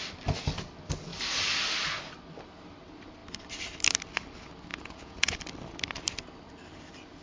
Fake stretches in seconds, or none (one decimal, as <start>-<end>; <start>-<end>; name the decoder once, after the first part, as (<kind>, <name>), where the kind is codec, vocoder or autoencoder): 4.7-5.4 (vocoder, Vocos)